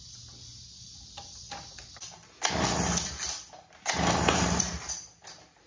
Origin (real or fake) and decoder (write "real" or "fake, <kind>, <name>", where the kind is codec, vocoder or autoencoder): real